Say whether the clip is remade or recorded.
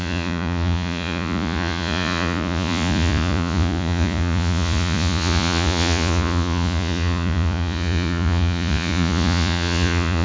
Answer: remade